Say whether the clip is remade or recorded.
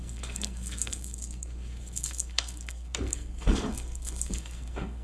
remade